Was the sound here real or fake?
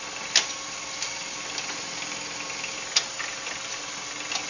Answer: real